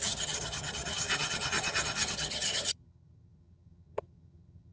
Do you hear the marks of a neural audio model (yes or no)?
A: yes